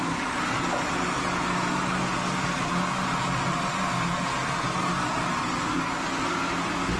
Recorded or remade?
recorded